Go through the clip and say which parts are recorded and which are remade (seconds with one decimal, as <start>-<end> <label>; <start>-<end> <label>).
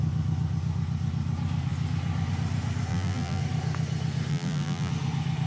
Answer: 0.0-2.9 recorded; 2.9-3.4 remade; 3.4-4.3 recorded; 4.3-4.9 remade; 4.9-5.5 recorded